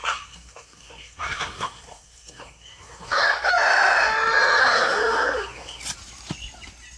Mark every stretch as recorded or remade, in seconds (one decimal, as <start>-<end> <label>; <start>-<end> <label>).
0.0-3.5 remade; 3.5-4.6 recorded; 4.6-5.8 remade; 5.8-7.0 recorded